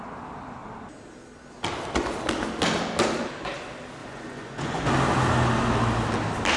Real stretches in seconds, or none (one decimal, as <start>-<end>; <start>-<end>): 0.0-4.0; 4.9-6.6